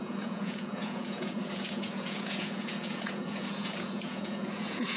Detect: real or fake fake